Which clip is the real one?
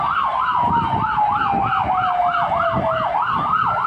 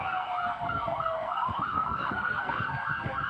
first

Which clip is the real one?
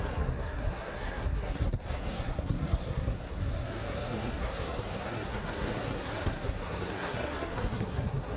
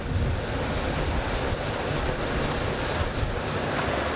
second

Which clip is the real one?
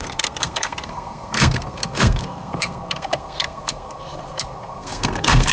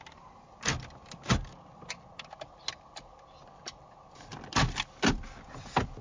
second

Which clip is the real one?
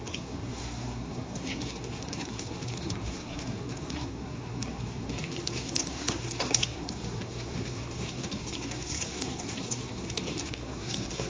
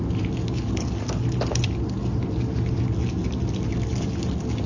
second